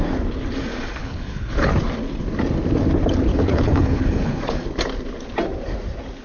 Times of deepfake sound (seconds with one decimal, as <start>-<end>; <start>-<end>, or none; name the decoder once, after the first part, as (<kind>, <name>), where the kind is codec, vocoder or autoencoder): 1.0-1.7 (codec, HILCodec); 3.3-4.4

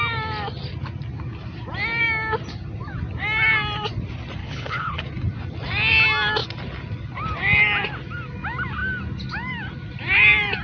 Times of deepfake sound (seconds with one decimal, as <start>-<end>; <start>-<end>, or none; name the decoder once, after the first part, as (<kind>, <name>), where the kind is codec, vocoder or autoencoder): 4.4-5.0 (codec, HILCodec)

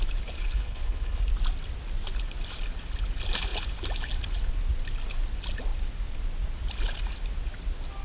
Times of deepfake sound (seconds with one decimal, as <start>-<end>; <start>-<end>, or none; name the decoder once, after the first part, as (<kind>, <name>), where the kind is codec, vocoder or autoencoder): 0.4-1.2 (codec, HILCodec)

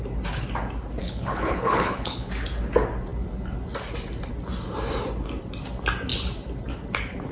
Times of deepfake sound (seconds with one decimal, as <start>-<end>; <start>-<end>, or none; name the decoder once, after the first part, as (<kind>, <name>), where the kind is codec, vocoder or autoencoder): 1.0-2.3 (codec, HILCodec)

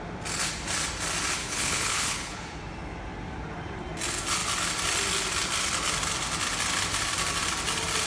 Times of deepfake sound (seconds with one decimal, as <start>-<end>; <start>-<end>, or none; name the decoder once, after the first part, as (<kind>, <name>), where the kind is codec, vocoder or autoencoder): 1.4-2.6 (codec, HILCodec)

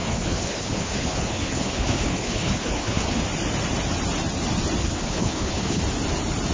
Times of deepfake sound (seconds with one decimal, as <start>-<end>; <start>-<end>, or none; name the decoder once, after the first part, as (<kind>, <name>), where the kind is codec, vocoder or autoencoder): 0.0-3.2 (codec, HILCodec); 4.8-5.8